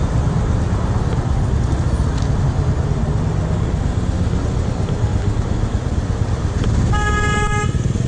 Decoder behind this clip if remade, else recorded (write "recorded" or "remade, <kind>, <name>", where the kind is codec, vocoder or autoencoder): recorded